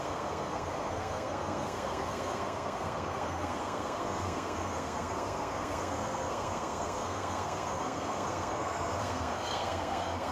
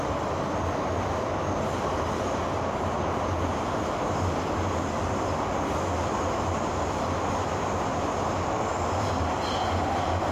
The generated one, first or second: first